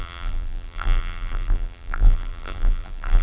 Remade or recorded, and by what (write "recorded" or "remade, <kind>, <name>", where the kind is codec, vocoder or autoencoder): remade, vocoder, BigVGAN v2